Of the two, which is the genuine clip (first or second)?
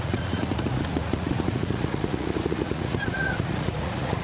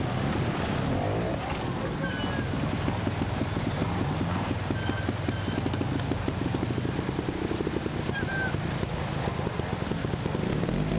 second